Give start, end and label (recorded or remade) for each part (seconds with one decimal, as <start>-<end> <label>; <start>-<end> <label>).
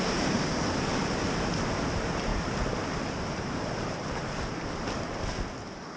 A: 0.0-6.0 recorded